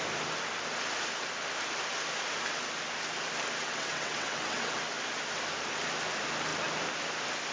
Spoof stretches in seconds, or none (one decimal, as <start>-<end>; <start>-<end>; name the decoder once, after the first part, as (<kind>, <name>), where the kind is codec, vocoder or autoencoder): 3.6-4.7 (vocoder, WaveNeXt)